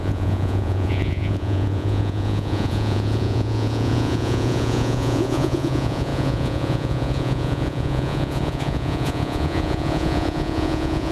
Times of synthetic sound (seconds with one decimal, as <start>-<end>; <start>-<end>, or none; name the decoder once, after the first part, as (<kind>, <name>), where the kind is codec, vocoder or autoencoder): 0.0-11.1 (vocoder, Vocos)